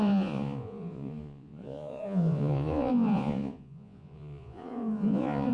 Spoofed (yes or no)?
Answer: yes